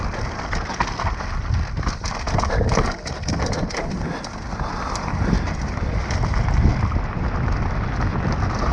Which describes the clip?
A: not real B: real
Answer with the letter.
B